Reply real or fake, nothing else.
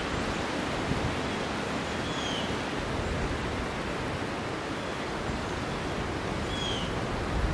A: real